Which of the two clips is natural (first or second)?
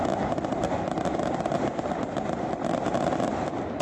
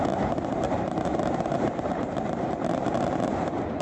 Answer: first